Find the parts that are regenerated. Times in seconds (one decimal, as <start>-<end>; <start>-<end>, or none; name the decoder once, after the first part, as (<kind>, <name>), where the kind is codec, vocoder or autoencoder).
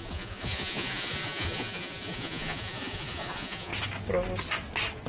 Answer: 0.0-3.7 (vocoder, Vocos)